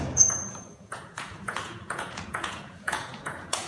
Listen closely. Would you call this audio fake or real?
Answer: fake